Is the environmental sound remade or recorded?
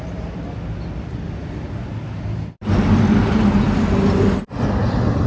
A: recorded